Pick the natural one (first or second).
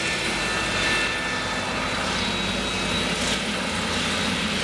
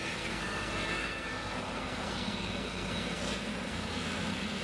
first